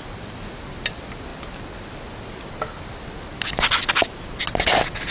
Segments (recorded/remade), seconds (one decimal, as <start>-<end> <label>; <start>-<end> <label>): 0.0-5.1 recorded